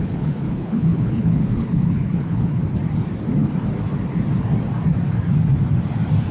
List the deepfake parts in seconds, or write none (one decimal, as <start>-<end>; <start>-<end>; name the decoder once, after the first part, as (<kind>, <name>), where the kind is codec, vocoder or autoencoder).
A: 0.0-2.6 (codec, HILCodec)